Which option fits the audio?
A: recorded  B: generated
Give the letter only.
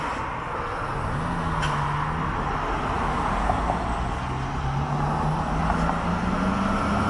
A